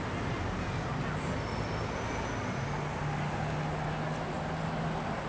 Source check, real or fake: real